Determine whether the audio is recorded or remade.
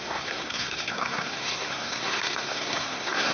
remade